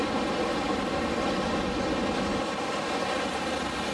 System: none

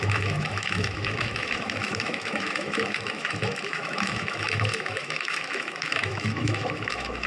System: autoencoder, DAC-VAE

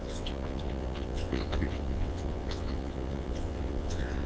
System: vocoder, WaveNeXt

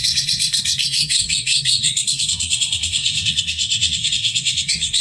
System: codec, SNAC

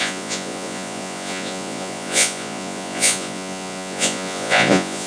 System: vocoder, Vocos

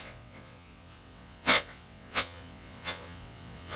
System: vocoder, WaveNeXt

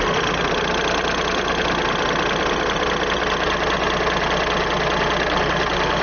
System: none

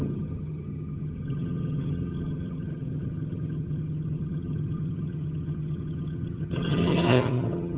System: vocoder, HiFi-GAN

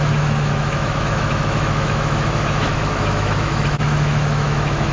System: autoencoder, DAC-VAE